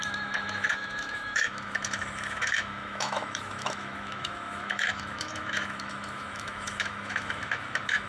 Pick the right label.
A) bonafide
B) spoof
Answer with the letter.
B